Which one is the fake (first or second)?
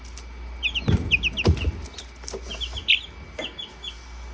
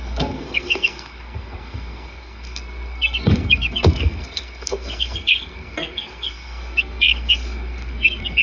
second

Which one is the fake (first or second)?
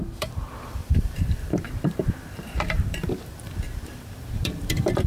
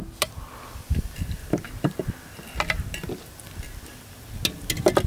first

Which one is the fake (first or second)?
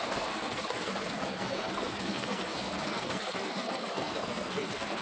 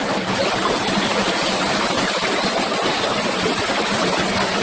first